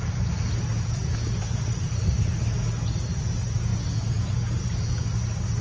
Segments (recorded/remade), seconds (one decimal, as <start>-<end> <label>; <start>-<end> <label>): 0.0-0.7 recorded; 0.7-1.4 remade; 1.4-3.7 recorded; 3.7-4.6 remade; 4.6-5.6 recorded